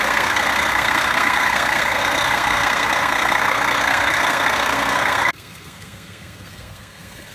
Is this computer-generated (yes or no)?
yes